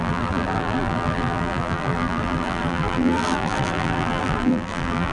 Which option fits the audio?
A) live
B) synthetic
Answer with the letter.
B